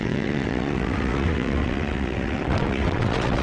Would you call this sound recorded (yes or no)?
no